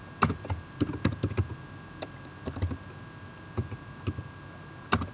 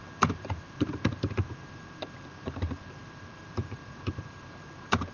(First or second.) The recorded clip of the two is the first